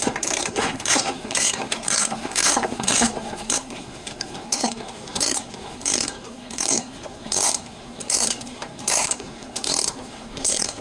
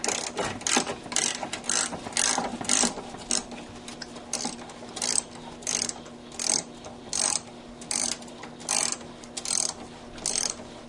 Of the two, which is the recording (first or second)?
second